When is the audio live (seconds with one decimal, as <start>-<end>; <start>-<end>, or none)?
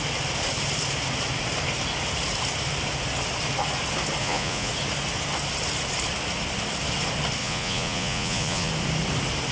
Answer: 0.0-4.2; 4.7-7.4; 8.7-9.5